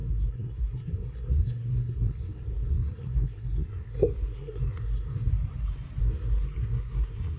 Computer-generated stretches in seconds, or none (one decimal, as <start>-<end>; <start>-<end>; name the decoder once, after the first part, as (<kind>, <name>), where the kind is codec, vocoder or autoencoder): 0.0-5.3 (codec, SNAC); 6.0-7.4